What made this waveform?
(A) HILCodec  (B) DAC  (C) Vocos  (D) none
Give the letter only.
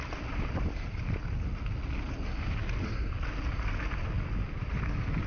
D